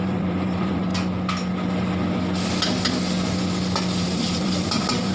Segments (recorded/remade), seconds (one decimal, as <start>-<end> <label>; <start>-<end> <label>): 0.0-0.9 remade; 0.9-4.0 recorded; 4.0-5.1 remade